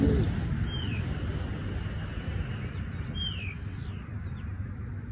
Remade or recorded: recorded